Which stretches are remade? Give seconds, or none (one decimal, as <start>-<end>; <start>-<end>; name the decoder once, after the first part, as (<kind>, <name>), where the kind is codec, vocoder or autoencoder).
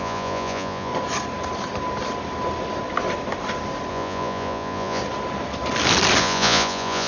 0.0-0.9 (vocoder, Vocos); 3.9-5.0; 6.2-7.1